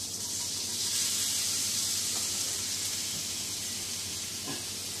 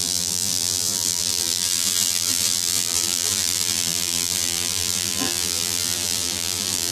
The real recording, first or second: first